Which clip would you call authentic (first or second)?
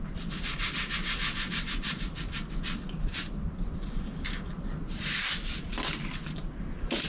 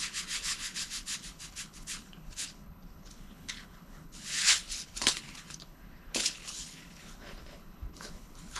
first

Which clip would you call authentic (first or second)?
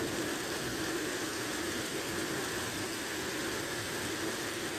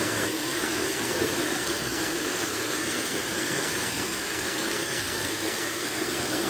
first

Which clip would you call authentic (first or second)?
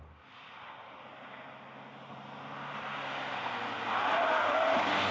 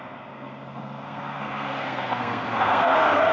first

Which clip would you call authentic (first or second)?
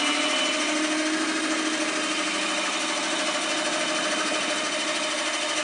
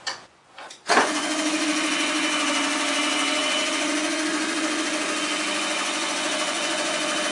first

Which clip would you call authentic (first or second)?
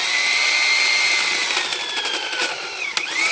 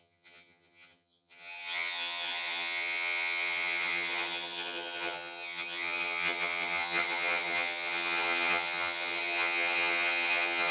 first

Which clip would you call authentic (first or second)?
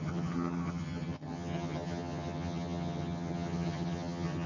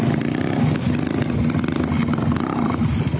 second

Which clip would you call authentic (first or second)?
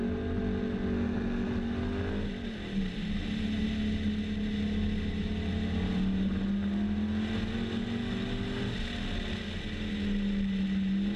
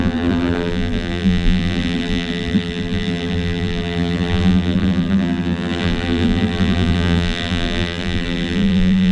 first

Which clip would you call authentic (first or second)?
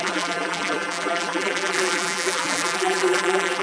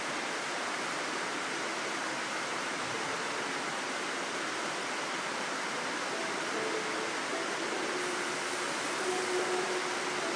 second